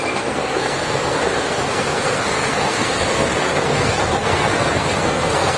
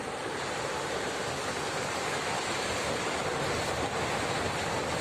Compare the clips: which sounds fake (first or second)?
first